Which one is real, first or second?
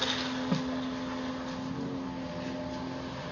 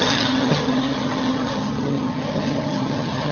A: first